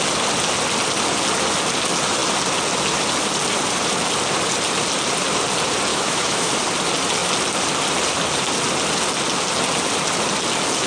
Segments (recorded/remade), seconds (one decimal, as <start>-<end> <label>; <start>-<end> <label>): 0.0-5.9 recorded; 5.9-6.5 remade; 6.5-10.9 recorded